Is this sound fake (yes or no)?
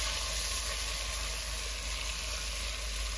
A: no